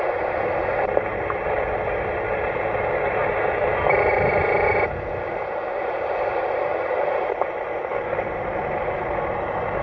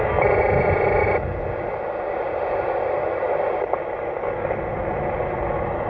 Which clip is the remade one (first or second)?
first